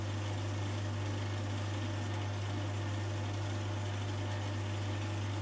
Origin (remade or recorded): recorded